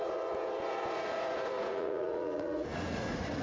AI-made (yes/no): yes